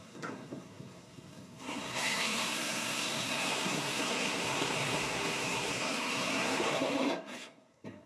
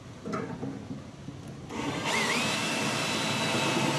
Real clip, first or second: second